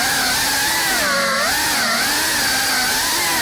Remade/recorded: recorded